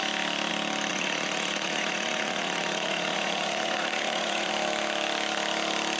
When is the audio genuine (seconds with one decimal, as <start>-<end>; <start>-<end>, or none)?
0.0-0.9; 4.5-6.0